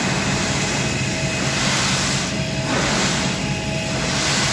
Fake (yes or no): no